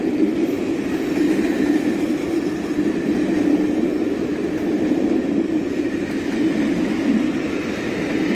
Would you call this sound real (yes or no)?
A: yes